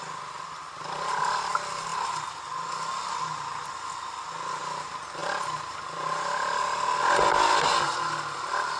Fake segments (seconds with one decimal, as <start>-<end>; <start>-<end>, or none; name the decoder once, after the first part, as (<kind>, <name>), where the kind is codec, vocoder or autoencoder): none

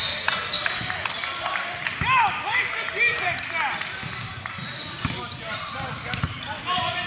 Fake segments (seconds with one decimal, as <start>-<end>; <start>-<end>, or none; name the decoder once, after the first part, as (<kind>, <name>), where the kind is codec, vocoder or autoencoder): 2.5-3.2 (codec, DAC)

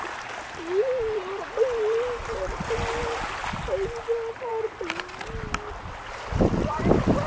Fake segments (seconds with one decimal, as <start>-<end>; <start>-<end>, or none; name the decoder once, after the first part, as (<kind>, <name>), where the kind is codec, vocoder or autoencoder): none

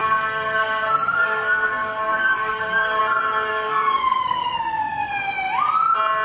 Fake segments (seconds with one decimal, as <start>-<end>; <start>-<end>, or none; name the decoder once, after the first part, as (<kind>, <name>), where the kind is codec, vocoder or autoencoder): 0.0-3.0 (codec, SNAC); 3.5-5.1

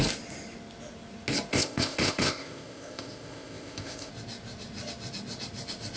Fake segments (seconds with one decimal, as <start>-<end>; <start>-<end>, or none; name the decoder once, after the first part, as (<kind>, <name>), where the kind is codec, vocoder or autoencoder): 1.5-4.1 (codec, ZipCodec)

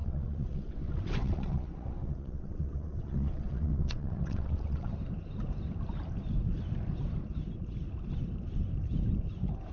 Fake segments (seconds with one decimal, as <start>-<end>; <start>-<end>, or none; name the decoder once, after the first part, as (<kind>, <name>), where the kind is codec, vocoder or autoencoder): 0.0-4.9 (vocoder, WaveNeXt)

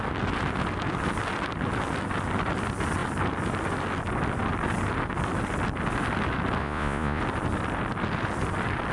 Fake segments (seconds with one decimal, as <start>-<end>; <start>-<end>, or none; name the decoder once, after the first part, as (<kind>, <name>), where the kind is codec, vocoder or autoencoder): 6.6-7.2 (vocoder, Vocos)